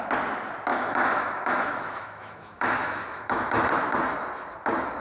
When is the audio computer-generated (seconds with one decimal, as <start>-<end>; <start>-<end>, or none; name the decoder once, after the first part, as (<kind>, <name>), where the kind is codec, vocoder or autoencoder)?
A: 0.7-3.7 (autoencoder, DAC-VAE)